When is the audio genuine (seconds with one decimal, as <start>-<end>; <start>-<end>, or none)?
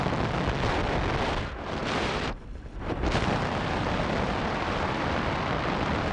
0.0-1.8; 5.3-6.1